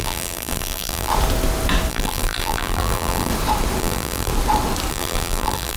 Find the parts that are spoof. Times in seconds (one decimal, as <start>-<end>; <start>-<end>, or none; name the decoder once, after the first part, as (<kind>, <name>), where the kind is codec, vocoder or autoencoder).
0.0-1.1 (vocoder, BigVGAN v2); 1.9-3.3; 3.8-4.3; 4.9-5.8